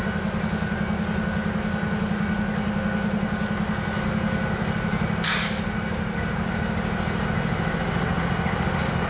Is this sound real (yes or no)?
yes